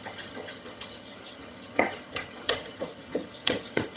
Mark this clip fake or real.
fake